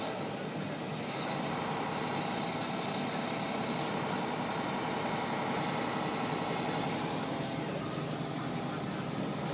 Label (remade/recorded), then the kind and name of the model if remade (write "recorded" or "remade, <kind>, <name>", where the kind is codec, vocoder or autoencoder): recorded